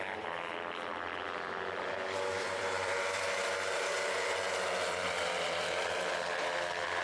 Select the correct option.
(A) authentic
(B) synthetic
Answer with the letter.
B